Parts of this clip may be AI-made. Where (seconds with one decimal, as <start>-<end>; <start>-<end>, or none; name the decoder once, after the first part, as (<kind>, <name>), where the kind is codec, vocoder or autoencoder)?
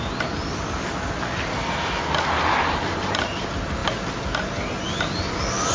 none